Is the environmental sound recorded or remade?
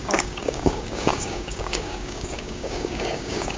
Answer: remade